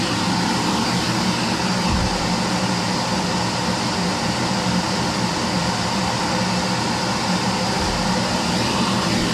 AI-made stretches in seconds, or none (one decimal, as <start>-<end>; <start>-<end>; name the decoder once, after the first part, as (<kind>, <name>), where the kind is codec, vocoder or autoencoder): none